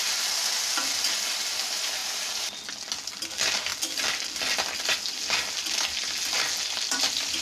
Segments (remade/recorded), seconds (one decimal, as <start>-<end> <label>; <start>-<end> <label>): 0.0-7.4 recorded